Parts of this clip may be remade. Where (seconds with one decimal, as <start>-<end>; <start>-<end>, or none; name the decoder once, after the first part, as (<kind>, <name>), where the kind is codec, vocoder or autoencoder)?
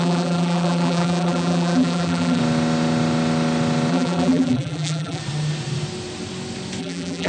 0.0-2.4 (vocoder, BigVGAN v2); 3.9-5.2; 6.8-7.3